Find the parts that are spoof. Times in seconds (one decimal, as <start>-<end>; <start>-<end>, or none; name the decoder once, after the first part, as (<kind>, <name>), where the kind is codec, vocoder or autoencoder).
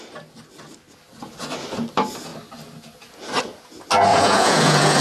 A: 4.1-5.0 (vocoder, Vocos)